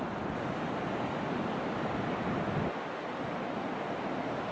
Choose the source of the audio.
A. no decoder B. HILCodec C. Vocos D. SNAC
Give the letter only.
A